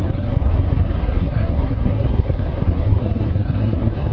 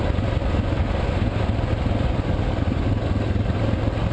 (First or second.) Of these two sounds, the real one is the second